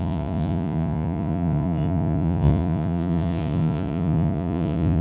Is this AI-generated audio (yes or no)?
yes